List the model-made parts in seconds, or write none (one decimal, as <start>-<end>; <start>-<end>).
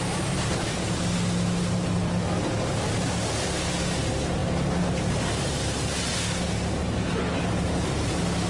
none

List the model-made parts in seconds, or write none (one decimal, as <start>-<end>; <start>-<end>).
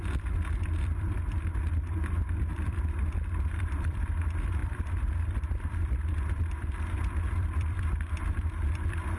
0.0-9.2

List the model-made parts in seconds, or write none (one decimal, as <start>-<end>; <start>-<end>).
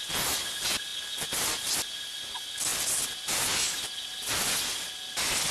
none